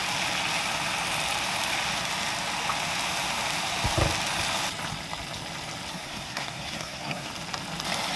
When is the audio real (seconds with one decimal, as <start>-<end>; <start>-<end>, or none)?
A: 0.0-5.9; 7.3-8.2